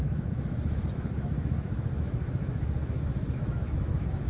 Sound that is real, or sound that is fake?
fake